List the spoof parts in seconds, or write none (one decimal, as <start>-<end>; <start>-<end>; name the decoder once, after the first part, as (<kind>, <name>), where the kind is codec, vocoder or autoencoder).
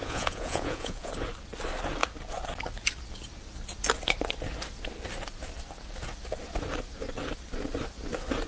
0.0-1.1 (vocoder, Vocos)